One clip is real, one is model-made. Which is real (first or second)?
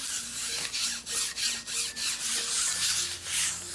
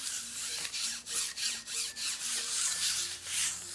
first